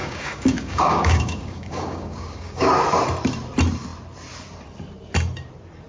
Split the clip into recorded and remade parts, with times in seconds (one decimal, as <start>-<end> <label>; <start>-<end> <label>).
0.0-2.7 remade; 2.7-5.9 recorded